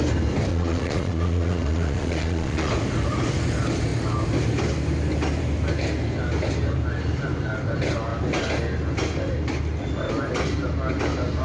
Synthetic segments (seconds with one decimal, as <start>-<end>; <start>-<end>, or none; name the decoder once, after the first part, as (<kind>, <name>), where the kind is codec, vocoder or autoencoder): 0.5-2.7 (vocoder, Vocos)